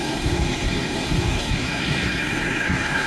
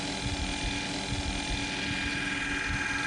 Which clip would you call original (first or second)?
second